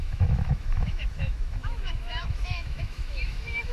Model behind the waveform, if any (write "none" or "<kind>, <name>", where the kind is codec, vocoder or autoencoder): autoencoder, DAC-VAE